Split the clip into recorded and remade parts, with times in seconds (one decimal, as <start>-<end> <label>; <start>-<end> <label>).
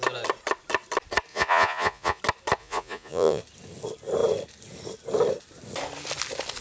0.0-1.3 recorded; 1.3-2.2 remade; 2.2-2.6 recorded; 2.6-3.4 remade; 3.4-6.6 recorded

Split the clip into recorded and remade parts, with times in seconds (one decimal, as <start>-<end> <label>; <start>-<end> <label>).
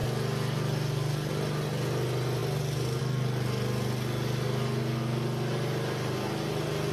0.0-6.9 recorded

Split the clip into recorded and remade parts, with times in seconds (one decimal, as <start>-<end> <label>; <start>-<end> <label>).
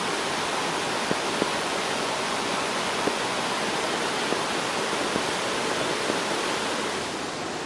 0.0-1.5 recorded; 1.5-3.4 remade; 3.4-7.7 recorded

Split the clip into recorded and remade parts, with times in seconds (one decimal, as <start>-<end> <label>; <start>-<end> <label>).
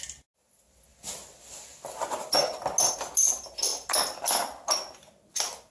0.0-5.7 recorded